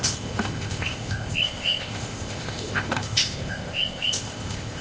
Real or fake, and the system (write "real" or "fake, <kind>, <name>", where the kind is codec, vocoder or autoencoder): fake, codec, ZipCodec